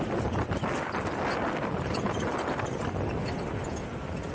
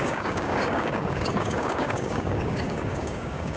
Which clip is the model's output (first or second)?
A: second